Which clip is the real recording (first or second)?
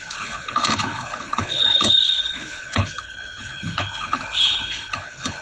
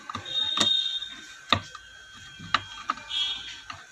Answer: second